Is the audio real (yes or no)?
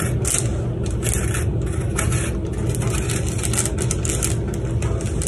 yes